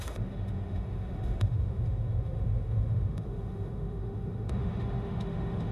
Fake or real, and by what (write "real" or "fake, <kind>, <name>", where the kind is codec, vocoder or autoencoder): fake, autoencoder, DAC-VAE